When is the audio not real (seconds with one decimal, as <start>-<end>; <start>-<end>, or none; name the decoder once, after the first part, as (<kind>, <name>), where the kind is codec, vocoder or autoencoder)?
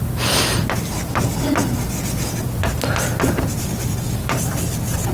none